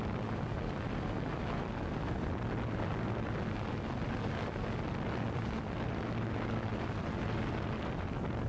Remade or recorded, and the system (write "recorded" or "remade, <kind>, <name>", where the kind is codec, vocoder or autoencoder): recorded